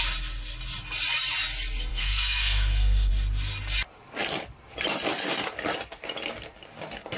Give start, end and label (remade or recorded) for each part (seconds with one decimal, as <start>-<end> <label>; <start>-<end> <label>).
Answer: 0.0-1.9 recorded; 1.9-3.1 remade; 3.1-7.2 recorded